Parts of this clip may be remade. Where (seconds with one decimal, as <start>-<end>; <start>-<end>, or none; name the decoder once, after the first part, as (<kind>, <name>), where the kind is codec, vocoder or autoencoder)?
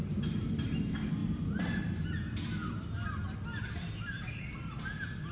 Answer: none